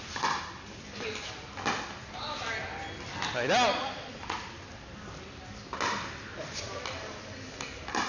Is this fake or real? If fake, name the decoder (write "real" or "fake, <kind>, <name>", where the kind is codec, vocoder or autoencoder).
real